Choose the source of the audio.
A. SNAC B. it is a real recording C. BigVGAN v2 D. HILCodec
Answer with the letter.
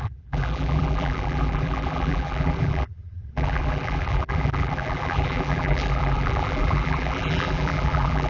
C